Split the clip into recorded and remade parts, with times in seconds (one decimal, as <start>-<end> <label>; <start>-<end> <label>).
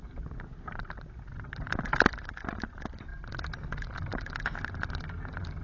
0.0-5.6 recorded